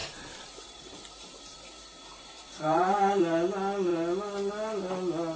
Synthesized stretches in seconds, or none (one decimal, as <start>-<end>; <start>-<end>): 0.0-3.2